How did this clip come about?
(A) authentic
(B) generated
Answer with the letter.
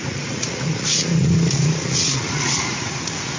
B